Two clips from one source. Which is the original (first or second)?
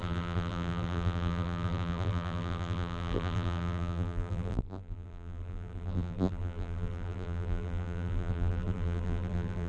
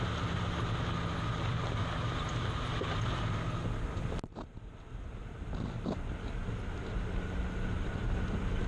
second